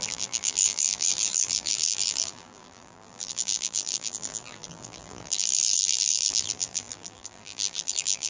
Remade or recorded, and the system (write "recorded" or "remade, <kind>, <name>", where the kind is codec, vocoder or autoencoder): remade, vocoder, BigVGAN v2